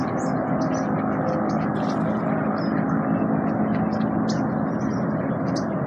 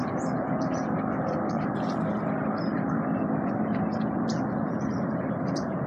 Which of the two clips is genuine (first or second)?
first